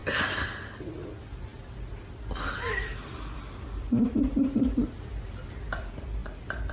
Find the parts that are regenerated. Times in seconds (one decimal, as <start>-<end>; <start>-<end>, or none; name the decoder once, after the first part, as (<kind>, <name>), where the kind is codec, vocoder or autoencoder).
none